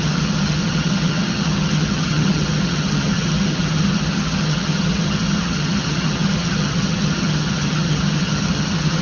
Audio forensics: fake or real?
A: fake